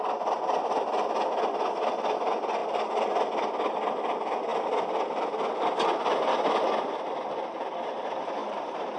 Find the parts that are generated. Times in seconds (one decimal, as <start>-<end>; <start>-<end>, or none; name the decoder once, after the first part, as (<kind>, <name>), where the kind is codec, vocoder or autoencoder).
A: 8.4-9.0 (vocoder, BigVGAN v2)